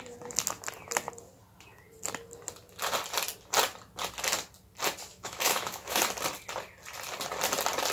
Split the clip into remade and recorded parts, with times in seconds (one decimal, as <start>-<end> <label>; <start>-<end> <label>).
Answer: 0.0-5.1 recorded; 5.1-6.0 remade; 6.0-7.9 recorded

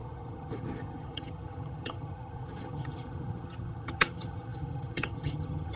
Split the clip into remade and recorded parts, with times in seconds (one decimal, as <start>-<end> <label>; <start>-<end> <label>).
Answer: 0.0-5.8 remade